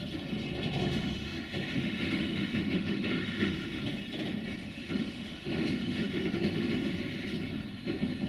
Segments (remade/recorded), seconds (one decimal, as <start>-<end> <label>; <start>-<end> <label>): 0.0-0.8 recorded; 0.8-3.8 remade; 3.8-4.6 recorded; 4.6-6.7 remade; 6.7-8.3 recorded